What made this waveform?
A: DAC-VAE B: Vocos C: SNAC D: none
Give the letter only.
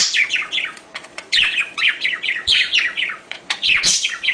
B